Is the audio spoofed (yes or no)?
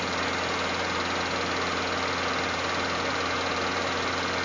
no